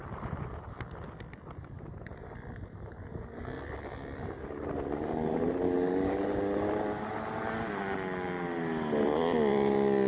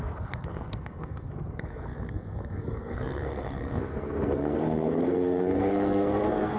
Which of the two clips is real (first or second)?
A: first